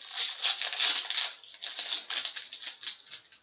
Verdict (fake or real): real